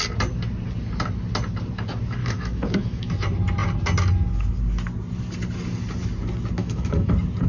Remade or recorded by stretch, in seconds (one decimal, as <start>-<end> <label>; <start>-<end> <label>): 0.0-2.2 recorded; 2.2-3.1 remade; 3.1-6.6 recorded; 6.6-7.1 remade; 7.1-7.5 recorded